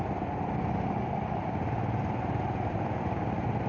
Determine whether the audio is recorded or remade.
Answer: recorded